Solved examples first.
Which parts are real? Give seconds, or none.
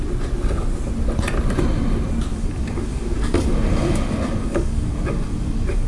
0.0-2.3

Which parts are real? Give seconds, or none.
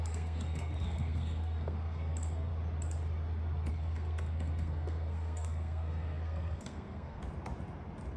2.5-3.7; 7.2-8.2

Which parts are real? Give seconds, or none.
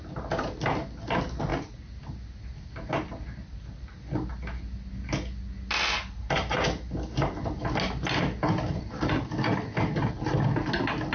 0.0-11.1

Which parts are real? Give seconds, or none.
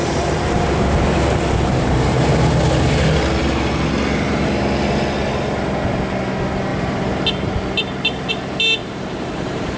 2.3-6.7; 8.3-8.8